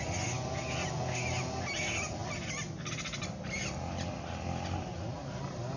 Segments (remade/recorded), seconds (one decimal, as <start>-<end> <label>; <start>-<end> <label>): 0.0-5.8 recorded